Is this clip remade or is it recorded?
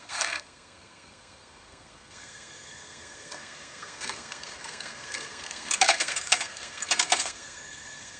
remade